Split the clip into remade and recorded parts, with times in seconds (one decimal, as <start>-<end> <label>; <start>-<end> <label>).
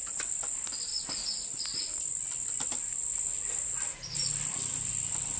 0.0-5.4 recorded